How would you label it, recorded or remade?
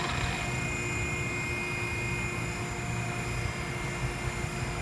recorded